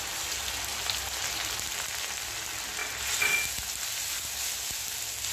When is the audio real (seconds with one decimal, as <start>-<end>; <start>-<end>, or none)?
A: 0.0-5.3